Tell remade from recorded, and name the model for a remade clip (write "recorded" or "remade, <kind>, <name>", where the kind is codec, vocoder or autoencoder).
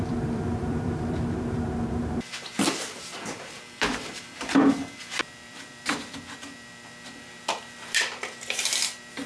remade, vocoder, BigVGAN v2